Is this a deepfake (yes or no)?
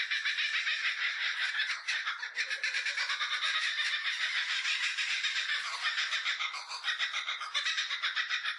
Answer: no